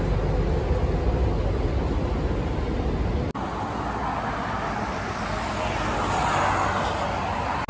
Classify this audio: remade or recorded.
recorded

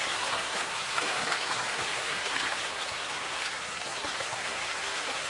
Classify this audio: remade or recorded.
remade